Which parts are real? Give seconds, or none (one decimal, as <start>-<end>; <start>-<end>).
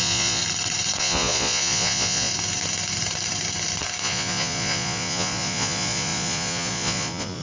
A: 0.4-1.0; 2.3-4.0